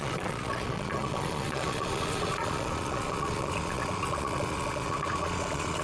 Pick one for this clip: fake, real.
fake